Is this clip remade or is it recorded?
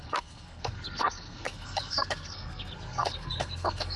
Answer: remade